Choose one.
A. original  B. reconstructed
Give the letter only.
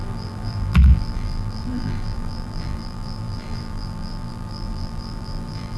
B